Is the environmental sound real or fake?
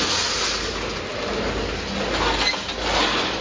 real